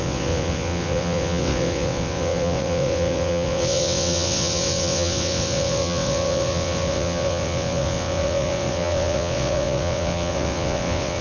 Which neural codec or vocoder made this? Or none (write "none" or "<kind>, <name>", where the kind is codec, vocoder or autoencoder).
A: vocoder, WaveNeXt